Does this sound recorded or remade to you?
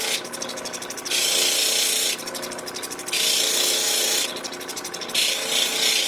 recorded